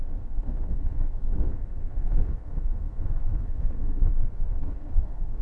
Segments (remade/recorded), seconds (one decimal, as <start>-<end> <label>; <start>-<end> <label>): 0.0-5.4 remade